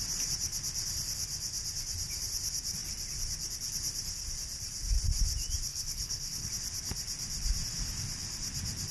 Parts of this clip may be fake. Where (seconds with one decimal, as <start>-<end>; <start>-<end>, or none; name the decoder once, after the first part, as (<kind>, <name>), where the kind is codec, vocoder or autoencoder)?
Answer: 5.7-6.5 (codec, HILCodec)